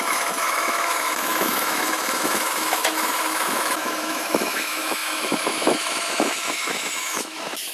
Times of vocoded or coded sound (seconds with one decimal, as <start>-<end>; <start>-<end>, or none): 0.0-7.7